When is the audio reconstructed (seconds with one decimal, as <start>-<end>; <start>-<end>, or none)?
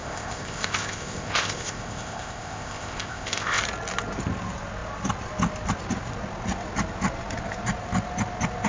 0.0-3.6